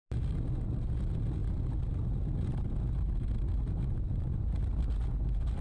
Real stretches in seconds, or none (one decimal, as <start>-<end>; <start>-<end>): 0.0-5.6